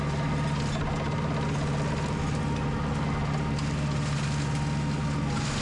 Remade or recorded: recorded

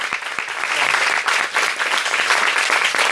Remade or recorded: recorded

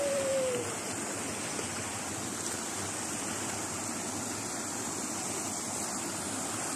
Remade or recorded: recorded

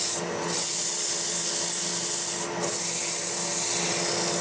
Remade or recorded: recorded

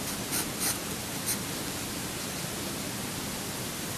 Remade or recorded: recorded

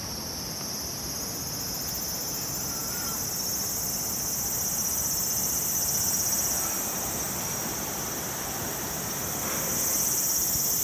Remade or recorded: recorded